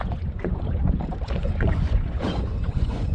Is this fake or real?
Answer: fake